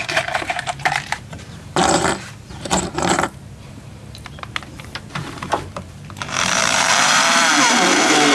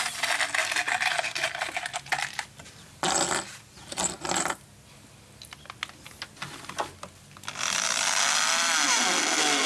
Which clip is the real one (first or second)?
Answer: second